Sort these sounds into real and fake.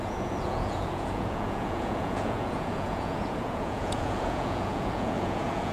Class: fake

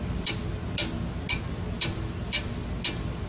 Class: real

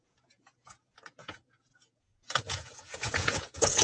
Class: fake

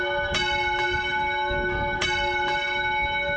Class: real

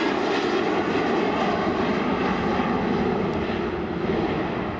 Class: real